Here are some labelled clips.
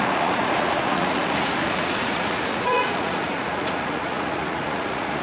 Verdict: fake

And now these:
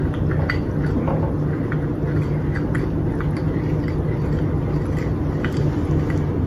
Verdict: real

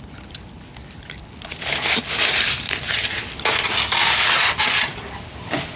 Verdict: real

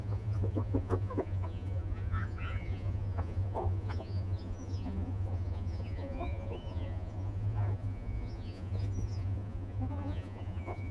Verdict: fake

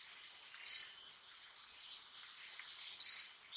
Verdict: real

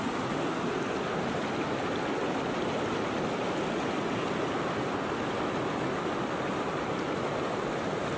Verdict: real